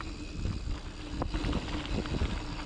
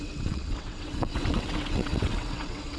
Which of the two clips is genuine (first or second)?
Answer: first